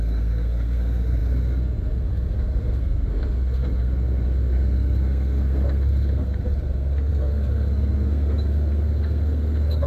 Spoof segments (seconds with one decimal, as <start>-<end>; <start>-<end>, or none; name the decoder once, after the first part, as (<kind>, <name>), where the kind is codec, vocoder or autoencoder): 0.0-9.9 (codec, SNAC)